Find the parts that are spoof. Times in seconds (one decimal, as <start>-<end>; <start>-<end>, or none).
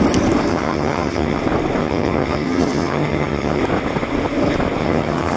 0.5-1.4; 1.8-3.6; 4.8-5.4